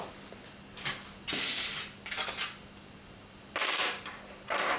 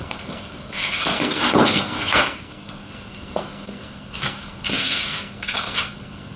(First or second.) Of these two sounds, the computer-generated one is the second